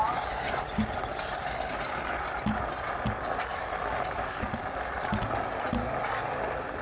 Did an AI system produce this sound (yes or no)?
no